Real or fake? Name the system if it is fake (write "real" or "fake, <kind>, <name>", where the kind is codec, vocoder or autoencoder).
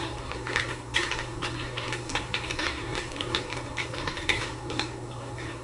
fake, codec, SNAC